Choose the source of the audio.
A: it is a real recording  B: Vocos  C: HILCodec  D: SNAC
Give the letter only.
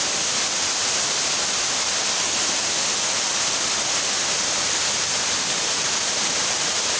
A